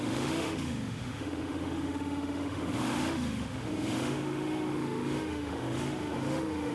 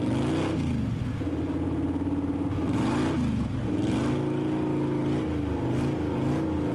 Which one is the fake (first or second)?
first